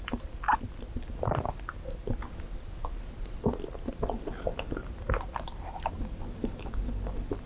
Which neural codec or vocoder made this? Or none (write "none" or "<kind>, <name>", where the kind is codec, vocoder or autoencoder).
none